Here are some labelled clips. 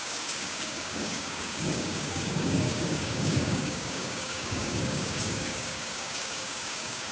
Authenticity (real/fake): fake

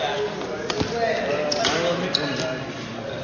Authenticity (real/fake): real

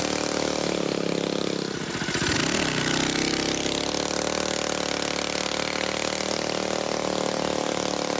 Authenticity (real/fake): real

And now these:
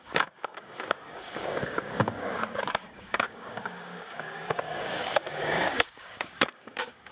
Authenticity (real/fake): fake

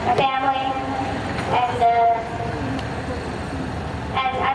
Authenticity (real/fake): real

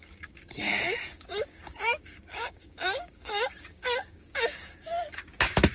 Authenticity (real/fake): fake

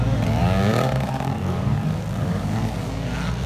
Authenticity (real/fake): fake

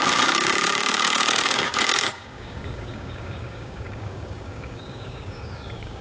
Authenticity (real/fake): fake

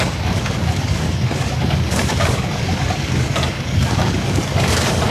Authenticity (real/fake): fake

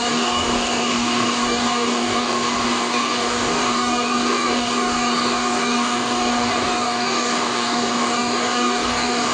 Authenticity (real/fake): fake